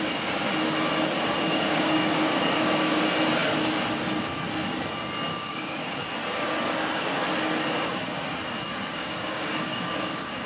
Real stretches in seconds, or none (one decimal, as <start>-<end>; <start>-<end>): 0.0-1.4; 3.0-5.3; 6.1-8.9